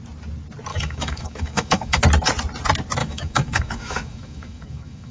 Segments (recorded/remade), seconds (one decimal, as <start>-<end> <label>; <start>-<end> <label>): 0.0-0.7 recorded; 0.7-2.0 remade; 2.0-3.0 recorded; 3.0-5.1 remade